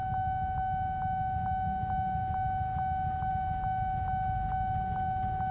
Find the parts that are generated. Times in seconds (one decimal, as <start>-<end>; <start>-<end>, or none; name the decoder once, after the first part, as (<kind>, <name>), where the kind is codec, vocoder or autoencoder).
none